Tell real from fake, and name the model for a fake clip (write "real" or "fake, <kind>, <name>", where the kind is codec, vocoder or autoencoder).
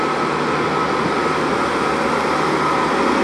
real